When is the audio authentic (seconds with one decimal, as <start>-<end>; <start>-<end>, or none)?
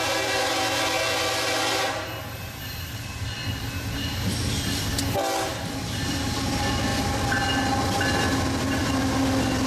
0.0-9.7